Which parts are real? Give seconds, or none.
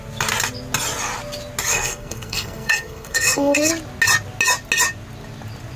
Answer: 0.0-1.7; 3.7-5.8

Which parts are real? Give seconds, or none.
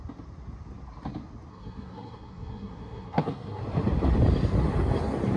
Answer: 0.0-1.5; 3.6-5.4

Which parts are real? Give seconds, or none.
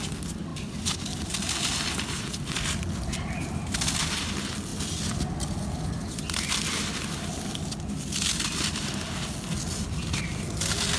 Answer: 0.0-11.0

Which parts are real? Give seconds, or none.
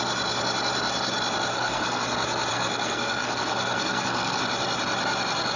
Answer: 0.0-1.5; 2.0-2.5; 4.4-5.6